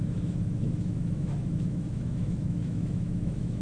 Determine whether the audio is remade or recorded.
remade